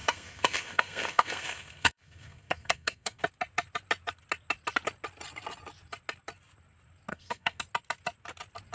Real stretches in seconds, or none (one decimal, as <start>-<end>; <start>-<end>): 3.2-7.1; 7.6-8.7